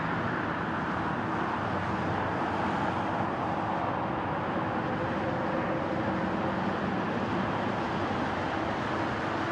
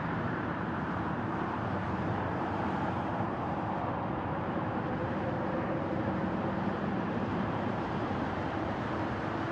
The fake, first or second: second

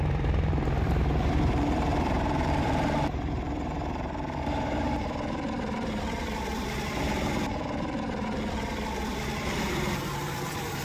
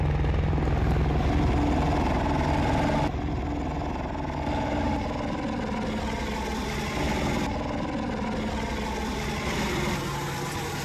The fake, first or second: first